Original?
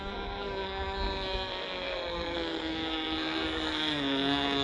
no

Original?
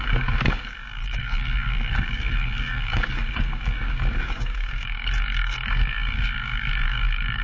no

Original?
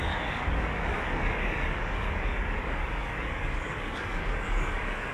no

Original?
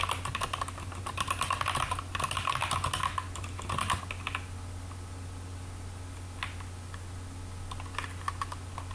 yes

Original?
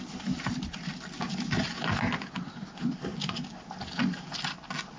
yes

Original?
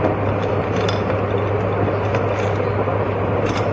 yes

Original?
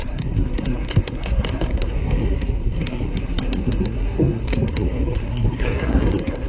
no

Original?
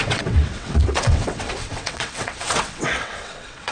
no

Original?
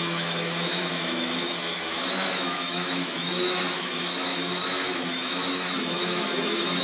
no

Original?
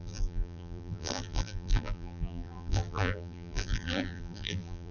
no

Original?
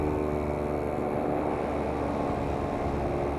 yes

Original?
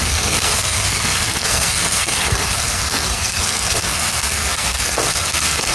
no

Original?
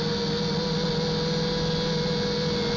yes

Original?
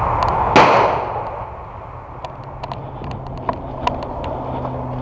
yes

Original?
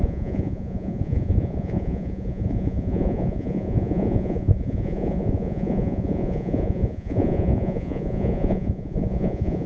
no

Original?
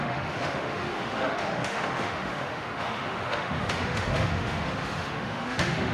no